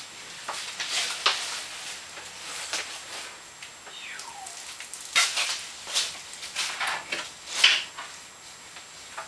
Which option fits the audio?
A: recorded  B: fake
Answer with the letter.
A